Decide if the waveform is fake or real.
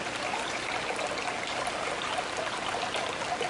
real